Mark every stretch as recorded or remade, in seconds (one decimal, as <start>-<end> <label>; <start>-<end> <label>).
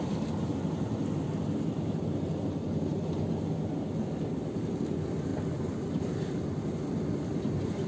0.0-2.9 remade; 2.9-4.0 recorded; 4.0-7.9 remade